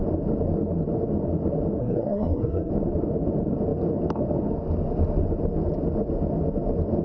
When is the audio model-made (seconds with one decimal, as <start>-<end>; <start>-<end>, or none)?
1.8-2.7